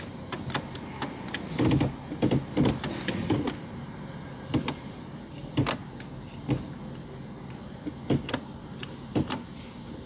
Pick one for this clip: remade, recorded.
recorded